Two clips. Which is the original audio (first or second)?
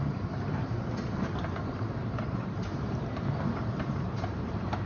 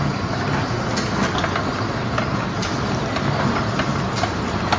second